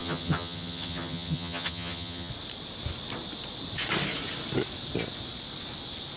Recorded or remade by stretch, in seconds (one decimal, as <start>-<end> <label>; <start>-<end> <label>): 0.0-2.3 remade; 2.3-6.2 recorded